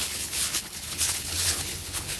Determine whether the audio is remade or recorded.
remade